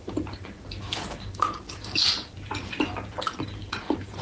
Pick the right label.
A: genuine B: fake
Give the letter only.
B